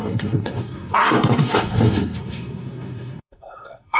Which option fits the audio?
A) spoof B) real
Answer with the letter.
A